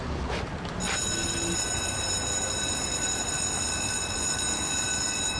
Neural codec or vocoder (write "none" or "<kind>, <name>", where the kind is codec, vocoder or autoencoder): none